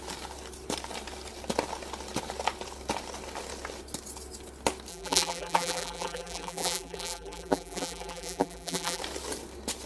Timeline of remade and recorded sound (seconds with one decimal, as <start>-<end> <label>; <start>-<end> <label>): 0.0-4.9 recorded; 4.9-9.0 remade; 9.0-9.9 recorded